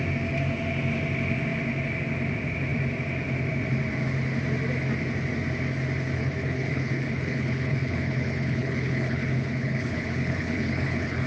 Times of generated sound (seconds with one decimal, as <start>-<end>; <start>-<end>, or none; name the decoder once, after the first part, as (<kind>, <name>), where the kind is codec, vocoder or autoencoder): 6.2-11.3 (codec, HILCodec)